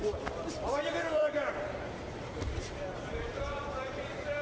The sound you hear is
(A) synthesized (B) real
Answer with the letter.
A